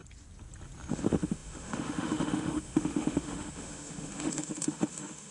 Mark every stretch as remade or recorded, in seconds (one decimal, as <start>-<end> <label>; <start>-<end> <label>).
0.0-0.9 recorded; 0.9-5.3 remade